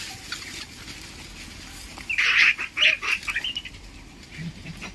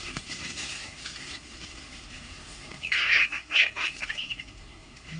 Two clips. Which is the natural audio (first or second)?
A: first